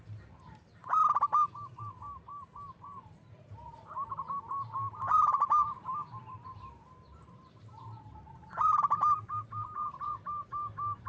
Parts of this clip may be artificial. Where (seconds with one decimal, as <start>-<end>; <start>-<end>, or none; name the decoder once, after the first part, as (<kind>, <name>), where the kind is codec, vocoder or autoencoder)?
0.0-0.8 (vocoder, BigVGAN v2); 1.5-11.1